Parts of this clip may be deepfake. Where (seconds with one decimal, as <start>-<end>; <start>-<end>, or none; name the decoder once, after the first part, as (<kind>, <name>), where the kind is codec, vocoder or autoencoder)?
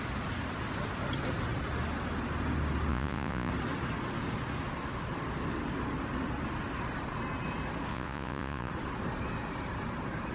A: 2.9-3.5 (vocoder, Vocos); 7.9-8.7